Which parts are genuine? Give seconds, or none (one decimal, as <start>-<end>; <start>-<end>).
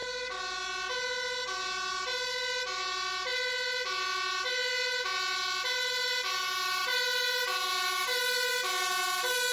0.0-9.5